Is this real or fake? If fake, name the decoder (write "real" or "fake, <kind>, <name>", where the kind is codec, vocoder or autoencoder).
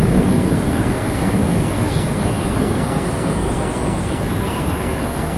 fake, codec, SNAC